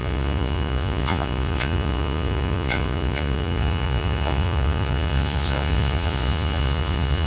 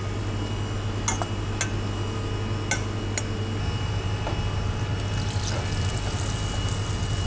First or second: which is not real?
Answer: first